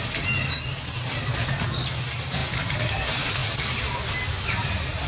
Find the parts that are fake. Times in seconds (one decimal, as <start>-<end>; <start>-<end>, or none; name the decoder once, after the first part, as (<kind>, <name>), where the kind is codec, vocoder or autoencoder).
none